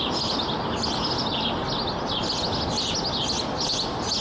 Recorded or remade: recorded